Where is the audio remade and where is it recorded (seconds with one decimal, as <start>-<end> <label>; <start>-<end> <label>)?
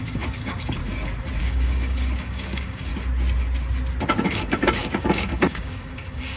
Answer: 0.0-0.8 remade; 0.8-1.4 recorded; 1.4-2.9 remade; 2.9-4.1 recorded; 4.1-6.4 remade